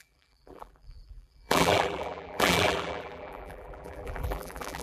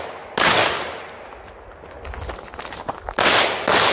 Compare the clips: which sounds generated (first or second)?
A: first